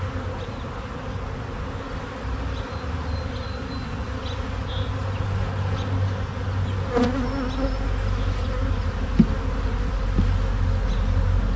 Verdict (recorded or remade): recorded